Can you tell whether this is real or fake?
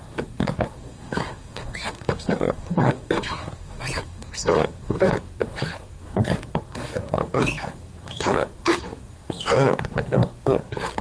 fake